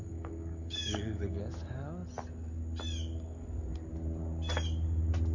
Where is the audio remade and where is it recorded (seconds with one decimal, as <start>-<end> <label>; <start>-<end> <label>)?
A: 0.0-1.4 remade; 1.4-5.3 recorded